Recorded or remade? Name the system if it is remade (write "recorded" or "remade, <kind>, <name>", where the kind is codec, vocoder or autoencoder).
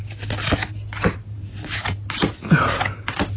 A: recorded